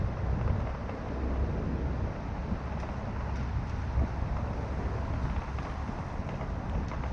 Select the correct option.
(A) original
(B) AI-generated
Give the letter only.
A